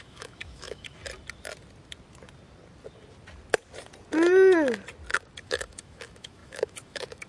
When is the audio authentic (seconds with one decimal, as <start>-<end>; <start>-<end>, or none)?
1.0-5.4